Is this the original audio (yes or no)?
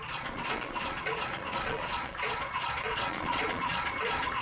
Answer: no